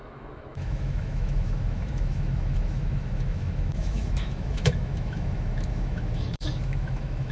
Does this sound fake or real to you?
fake